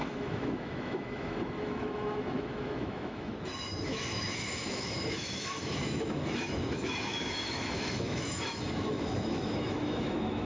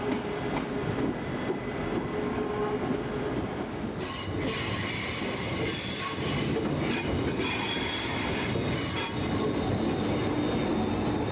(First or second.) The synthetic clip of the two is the first